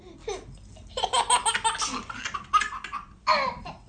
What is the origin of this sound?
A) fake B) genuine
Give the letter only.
B